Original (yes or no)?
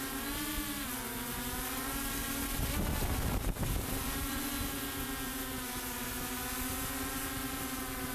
yes